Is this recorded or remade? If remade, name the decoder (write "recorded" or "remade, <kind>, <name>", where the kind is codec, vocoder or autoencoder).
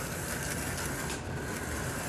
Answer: recorded